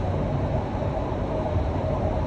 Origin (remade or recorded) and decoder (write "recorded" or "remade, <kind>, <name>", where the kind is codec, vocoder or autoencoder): remade, vocoder, BigVGAN v2